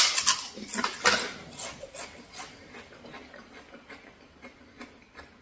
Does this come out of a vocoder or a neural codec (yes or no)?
no